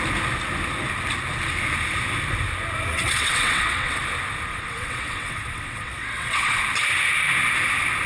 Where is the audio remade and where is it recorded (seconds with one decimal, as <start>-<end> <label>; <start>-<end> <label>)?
0.0-2.9 recorded; 2.9-4.0 remade; 4.0-4.5 recorded; 4.5-6.6 remade; 6.6-8.1 recorded